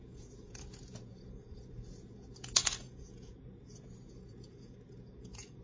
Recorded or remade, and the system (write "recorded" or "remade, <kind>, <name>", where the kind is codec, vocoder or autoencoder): remade, vocoder, Vocos